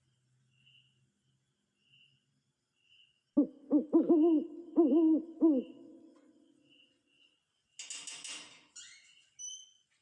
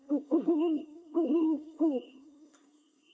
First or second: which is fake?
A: second